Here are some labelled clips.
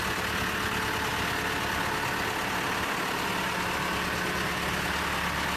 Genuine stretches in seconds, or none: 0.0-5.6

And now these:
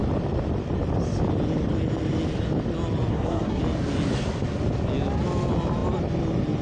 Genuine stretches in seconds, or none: 0.0-3.1; 3.6-6.6

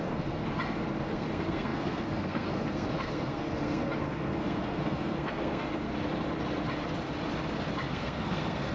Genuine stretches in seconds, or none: 0.4-1.0; 5.9-7.9

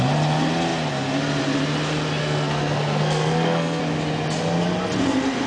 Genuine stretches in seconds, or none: 0.0-2.2; 3.8-5.5